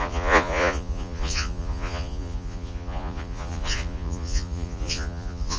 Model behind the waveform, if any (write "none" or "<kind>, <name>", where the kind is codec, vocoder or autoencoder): vocoder, Vocos